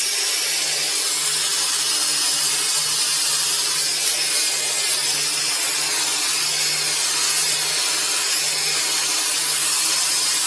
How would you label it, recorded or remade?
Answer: recorded